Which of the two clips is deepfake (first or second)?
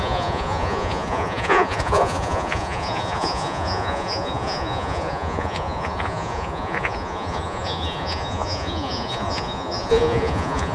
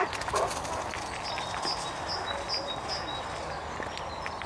first